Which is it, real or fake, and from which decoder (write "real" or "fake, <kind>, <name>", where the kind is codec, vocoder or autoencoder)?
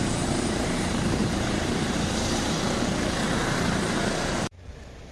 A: fake, vocoder, BigVGAN v2